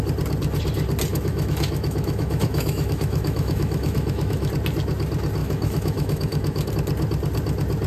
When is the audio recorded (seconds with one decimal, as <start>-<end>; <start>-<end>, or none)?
0.0-1.1; 4.5-5.4; 6.7-7.9